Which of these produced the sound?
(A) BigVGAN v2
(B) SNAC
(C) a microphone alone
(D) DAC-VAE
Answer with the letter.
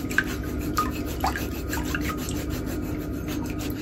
C